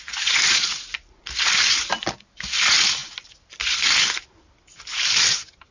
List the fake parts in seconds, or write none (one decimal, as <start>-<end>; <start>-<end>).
none